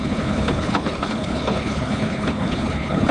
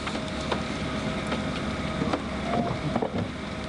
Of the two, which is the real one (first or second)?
second